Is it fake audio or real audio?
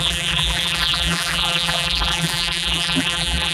fake